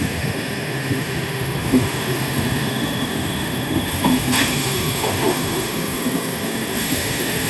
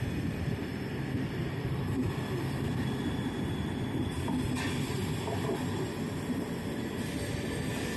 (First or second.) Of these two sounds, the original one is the second